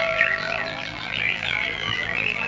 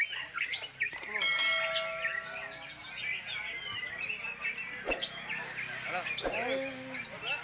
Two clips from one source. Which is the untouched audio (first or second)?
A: second